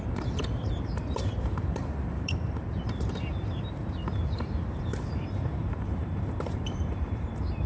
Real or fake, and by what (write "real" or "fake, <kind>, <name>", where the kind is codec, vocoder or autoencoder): fake, vocoder, BigVGAN v2